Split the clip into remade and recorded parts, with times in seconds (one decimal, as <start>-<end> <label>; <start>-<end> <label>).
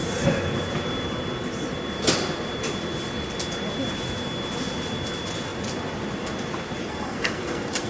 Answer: 0.0-6.8 recorded; 6.8-7.9 remade